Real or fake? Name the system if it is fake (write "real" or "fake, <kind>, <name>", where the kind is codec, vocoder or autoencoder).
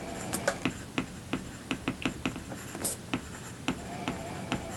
real